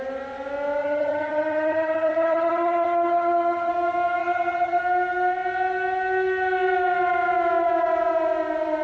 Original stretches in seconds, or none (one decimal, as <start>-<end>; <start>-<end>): 0.0-0.8; 3.7-4.2; 4.8-8.8